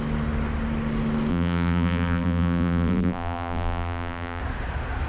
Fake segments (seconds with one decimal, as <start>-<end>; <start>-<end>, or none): 1.3-4.4